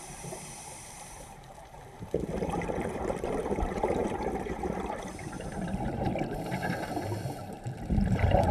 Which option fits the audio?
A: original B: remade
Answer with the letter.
B